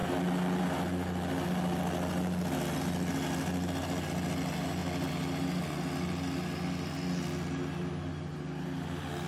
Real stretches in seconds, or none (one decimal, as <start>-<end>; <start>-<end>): 0.0-9.3